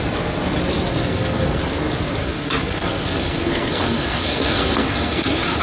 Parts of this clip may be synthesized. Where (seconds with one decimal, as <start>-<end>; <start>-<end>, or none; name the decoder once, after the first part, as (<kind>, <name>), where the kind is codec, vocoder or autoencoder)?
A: 0.9-1.6 (codec, SNAC); 2.2-5.6